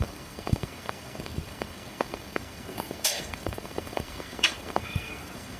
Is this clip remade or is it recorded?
remade